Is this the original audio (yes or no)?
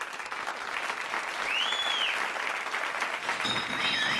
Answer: yes